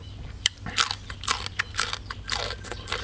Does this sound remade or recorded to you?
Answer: recorded